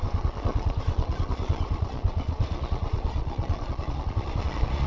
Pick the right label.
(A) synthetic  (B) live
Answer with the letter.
A